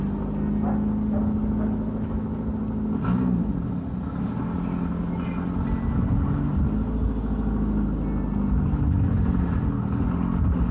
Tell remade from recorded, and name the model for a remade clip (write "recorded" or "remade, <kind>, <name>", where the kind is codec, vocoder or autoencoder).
recorded